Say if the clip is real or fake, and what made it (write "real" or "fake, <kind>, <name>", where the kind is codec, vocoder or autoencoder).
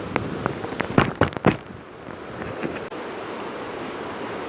real